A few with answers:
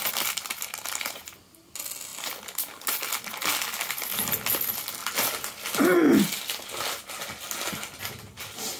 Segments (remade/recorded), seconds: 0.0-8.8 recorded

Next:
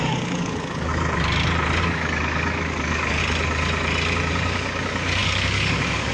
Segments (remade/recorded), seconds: 0.0-0.9 remade; 0.9-1.8 recorded; 1.8-3.2 remade; 3.2-4.3 recorded; 4.3-6.1 remade

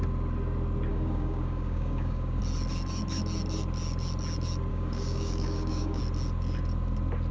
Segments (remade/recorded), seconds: 0.0-0.9 recorded; 0.9-2.4 remade; 2.4-4.7 recorded; 4.7-6.0 remade; 6.0-7.3 recorded

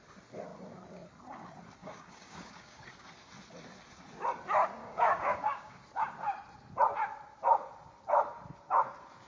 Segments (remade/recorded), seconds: 0.0-1.8 recorded; 1.8-2.8 remade; 2.8-4.8 recorded; 4.8-5.8 remade; 5.8-9.3 recorded

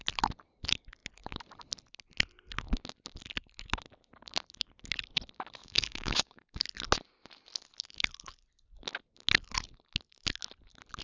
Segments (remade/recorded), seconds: 0.0-5.6 recorded; 5.6-6.6 remade; 6.6-11.0 recorded

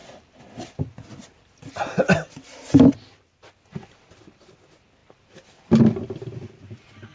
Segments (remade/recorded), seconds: 0.0-7.1 recorded